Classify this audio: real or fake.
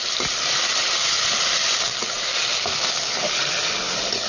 real